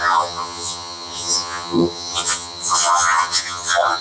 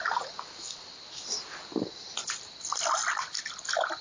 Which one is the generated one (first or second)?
first